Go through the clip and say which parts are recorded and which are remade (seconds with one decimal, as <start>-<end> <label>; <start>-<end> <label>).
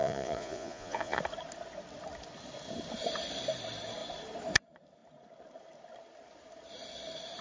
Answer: 0.0-1.2 remade; 1.2-7.4 recorded